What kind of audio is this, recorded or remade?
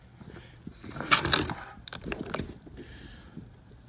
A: recorded